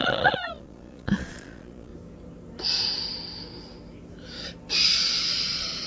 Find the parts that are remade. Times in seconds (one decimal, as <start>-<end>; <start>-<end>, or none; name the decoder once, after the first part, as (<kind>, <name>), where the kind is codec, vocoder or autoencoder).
0.0-1.9 (vocoder, Vocos); 5.4-5.9